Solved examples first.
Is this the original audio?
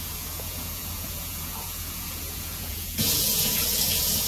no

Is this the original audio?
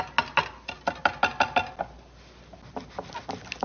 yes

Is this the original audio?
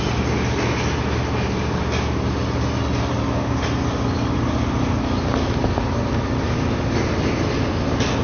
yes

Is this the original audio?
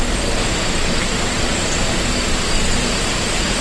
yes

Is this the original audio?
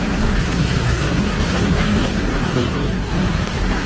no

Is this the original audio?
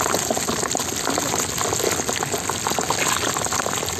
yes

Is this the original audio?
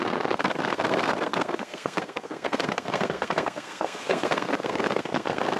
no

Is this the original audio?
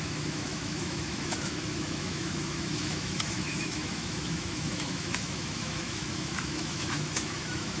no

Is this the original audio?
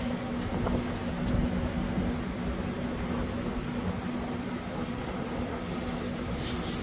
yes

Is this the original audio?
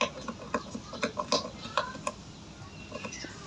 yes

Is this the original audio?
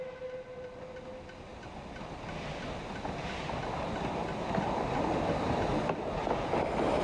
yes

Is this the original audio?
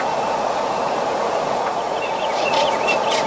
no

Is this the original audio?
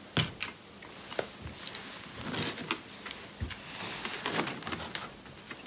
yes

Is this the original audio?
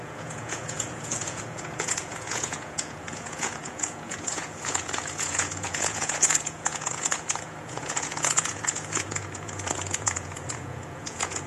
no